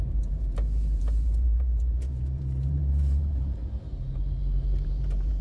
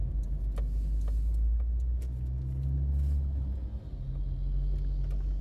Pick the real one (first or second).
second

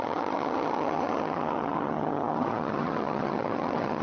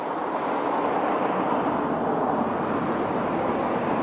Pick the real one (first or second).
second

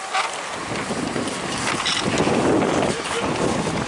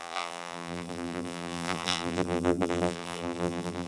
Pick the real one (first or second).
first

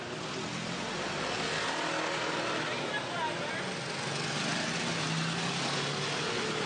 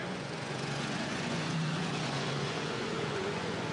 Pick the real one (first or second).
first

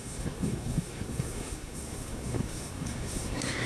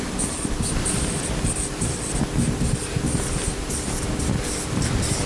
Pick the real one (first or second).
second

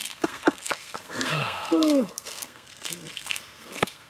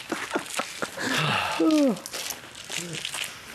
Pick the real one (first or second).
second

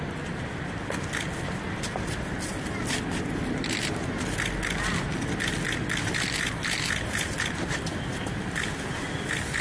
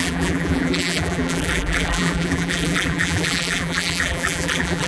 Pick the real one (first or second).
first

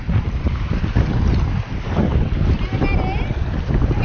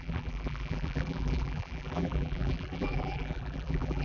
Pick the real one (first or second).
first